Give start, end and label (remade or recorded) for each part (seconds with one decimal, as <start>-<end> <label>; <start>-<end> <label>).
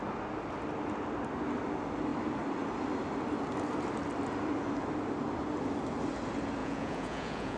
0.0-6.6 recorded; 6.6-7.6 remade